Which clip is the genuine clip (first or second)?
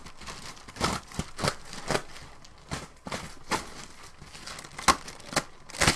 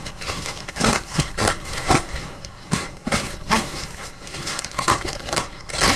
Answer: first